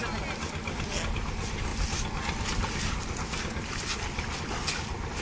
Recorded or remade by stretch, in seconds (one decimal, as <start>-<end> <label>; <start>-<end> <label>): 0.0-5.2 recorded